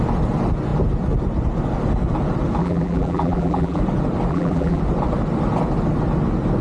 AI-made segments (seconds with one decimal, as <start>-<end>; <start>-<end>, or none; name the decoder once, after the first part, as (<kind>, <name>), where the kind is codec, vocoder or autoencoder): 2.6-3.8 (vocoder, BigVGAN v2); 4.3-4.8